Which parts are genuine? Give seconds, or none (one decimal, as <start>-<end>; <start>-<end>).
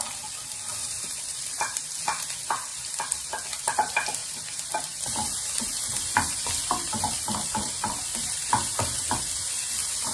0.0-0.8; 1.9-2.7; 3.3-4.2; 9.2-10.1